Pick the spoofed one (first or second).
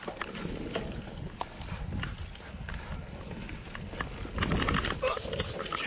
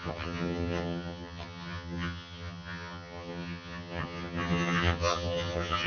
second